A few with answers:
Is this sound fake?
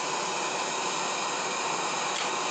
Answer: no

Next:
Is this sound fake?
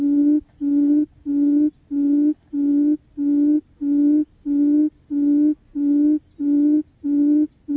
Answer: no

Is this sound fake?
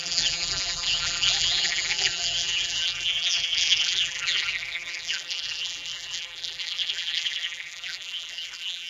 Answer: yes